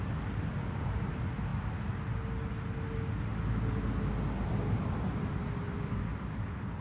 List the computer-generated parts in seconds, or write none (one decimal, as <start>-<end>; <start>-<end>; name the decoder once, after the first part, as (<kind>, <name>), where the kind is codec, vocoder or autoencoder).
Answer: none